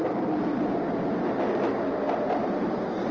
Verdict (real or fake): real